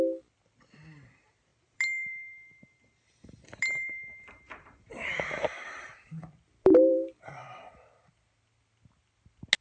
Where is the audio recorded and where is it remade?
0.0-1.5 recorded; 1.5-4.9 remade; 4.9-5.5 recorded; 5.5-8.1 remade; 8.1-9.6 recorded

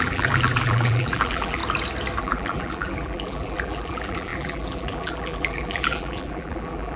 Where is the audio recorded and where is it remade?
0.0-1.6 remade; 1.6-2.2 recorded; 2.2-7.0 remade

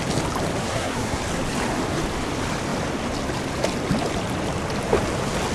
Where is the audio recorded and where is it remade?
0.0-0.6 recorded; 0.6-1.2 remade; 1.2-5.5 recorded

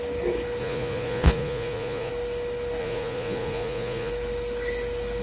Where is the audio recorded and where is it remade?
0.0-0.6 recorded; 0.6-2.1 remade; 2.1-2.8 recorded; 2.8-4.1 remade; 4.1-5.2 recorded